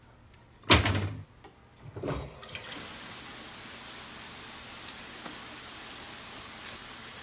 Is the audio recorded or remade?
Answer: recorded